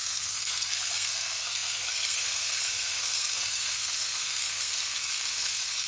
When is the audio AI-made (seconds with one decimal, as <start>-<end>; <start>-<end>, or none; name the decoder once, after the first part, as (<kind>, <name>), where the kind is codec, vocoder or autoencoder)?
0.0-5.9 (codec, SNAC)